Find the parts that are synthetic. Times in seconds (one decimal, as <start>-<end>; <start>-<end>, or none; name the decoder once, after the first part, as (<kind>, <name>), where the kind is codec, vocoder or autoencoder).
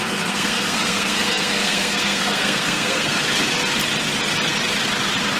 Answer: 0.0-3.2 (codec, SNAC)